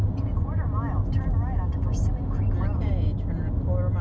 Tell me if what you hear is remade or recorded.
recorded